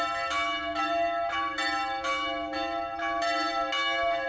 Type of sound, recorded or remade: recorded